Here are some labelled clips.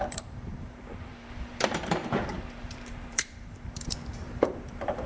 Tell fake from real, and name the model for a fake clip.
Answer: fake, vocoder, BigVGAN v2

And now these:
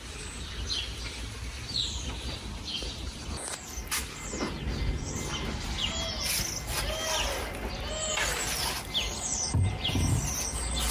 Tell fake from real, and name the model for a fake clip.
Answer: real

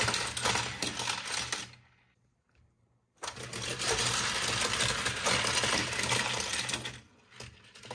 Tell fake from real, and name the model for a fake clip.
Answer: real